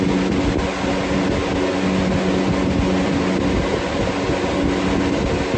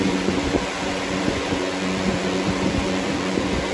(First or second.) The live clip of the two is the first